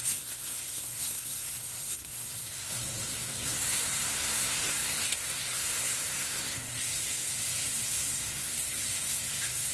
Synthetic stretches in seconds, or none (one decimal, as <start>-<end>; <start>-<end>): 0.0-9.7